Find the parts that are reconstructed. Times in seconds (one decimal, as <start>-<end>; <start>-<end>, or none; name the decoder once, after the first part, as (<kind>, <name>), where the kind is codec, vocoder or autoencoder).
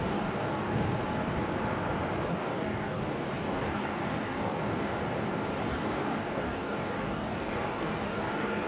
0.0-1.0 (codec, DAC); 2.3-4.9; 5.7-8.7